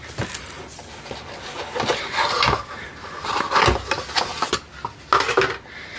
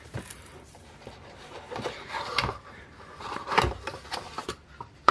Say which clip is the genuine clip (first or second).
first